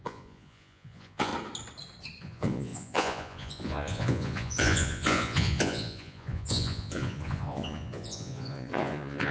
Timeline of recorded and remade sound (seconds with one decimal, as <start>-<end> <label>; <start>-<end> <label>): 0.0-1.3 remade; 1.3-2.2 recorded; 2.2-9.3 remade